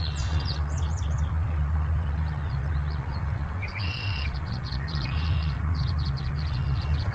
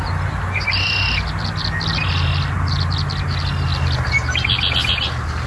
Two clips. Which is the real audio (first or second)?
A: second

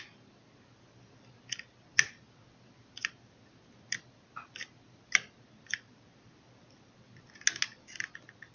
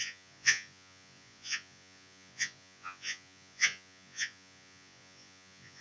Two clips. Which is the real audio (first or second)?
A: first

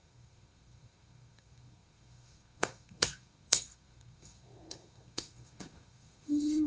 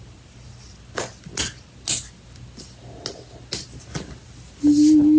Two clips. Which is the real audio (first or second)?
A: second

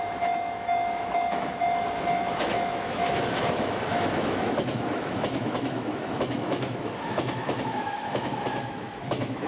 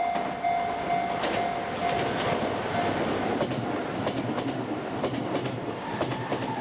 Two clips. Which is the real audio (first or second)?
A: second